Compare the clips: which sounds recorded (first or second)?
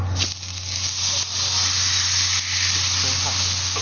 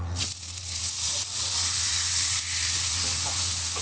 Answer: first